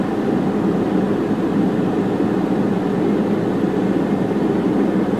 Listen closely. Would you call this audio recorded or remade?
recorded